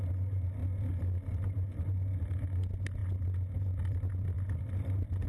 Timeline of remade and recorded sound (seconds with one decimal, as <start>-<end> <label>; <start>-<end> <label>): 0.0-5.3 recorded